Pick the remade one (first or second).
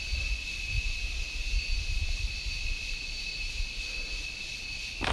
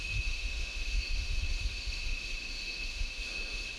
second